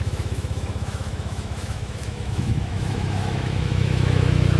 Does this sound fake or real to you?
fake